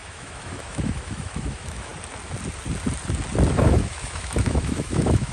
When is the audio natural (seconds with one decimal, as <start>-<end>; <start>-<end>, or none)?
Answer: 1.9-3.5